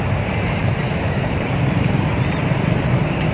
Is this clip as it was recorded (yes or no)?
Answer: no